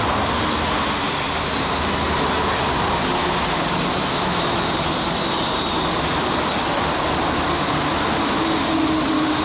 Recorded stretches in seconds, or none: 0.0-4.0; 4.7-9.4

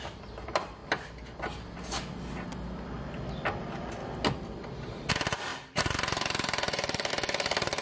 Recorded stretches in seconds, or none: 0.8-3.4; 4.0-5.1

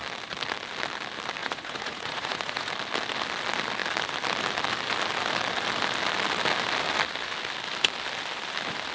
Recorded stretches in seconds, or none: 0.0-1.4; 2.7-8.9

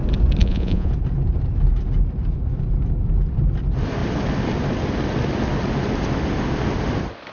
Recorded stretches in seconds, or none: 0.0-0.4; 0.9-7.3